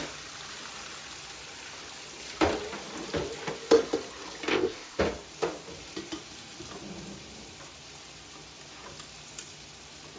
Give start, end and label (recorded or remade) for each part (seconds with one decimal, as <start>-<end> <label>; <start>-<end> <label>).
0.0-4.5 recorded; 4.5-5.0 remade; 5.0-10.2 recorded